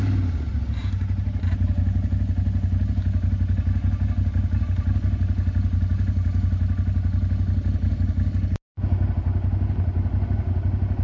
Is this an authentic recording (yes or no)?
yes